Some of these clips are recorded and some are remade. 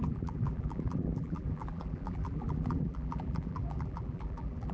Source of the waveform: remade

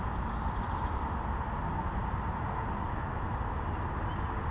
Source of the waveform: recorded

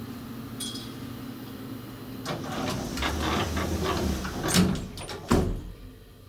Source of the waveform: recorded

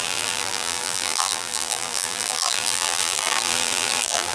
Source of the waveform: remade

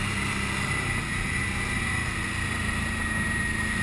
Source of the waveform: recorded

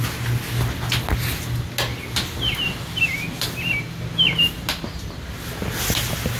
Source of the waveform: recorded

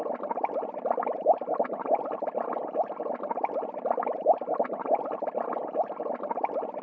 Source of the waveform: recorded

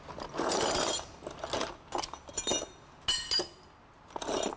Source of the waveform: recorded